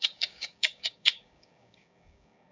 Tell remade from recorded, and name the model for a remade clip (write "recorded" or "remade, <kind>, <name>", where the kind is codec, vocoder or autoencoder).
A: remade, codec, DAC